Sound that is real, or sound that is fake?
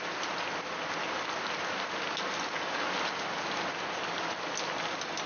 real